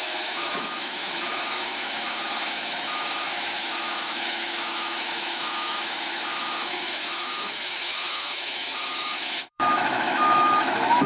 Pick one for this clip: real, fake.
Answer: fake